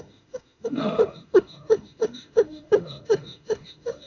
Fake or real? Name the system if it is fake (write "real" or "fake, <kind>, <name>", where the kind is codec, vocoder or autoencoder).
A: fake, autoencoder, DAC-VAE